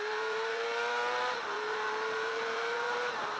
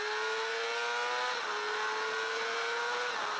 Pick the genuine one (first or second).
second